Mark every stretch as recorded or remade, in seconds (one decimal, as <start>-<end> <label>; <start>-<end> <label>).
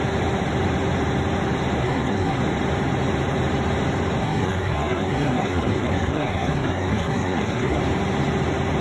0.0-1.8 recorded; 1.8-2.4 remade; 2.4-4.2 recorded; 4.2-7.8 remade; 7.8-8.8 recorded